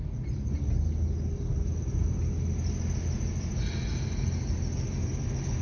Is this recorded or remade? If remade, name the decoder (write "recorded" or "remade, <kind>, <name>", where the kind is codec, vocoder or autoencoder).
recorded